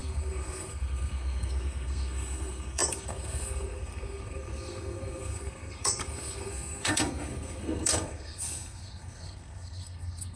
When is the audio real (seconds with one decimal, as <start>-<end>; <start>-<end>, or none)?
none